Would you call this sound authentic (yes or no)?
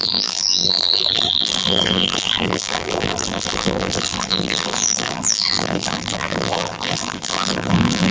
no